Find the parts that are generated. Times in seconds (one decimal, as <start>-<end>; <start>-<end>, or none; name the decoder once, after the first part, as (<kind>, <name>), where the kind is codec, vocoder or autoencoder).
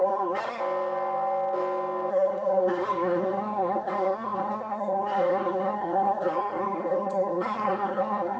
0.0-0.6 (codec, SNAC); 2.1-8.4